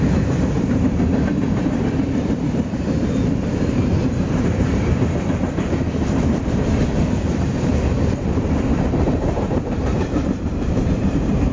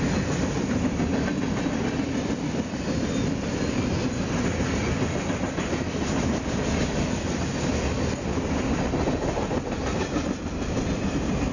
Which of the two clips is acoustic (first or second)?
second